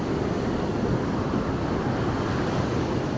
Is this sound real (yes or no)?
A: yes